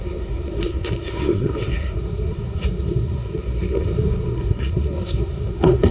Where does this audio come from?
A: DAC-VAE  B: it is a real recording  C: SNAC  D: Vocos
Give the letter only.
C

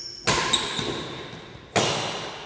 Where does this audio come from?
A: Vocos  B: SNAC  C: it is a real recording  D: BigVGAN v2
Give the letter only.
C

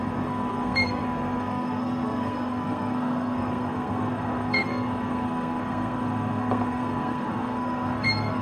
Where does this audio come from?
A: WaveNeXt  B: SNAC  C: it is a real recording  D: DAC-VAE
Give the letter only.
B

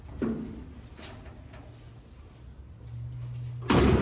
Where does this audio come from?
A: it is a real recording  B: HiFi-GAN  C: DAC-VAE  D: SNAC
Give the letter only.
A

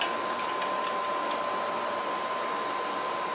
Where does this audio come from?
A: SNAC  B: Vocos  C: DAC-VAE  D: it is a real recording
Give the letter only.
D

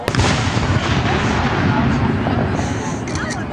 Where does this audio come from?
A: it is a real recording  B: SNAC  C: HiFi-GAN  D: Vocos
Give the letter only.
A